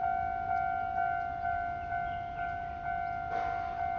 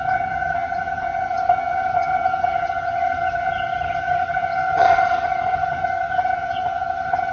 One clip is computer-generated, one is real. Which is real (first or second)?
first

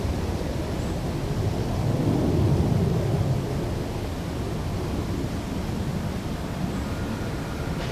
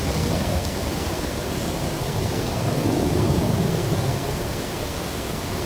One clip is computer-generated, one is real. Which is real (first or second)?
first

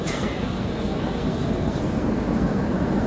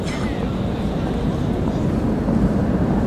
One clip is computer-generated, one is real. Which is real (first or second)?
second